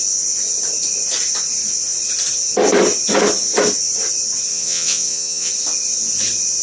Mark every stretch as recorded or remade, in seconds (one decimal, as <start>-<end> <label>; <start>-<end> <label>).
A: 0.0-4.5 recorded; 4.5-5.5 remade; 5.5-6.6 recorded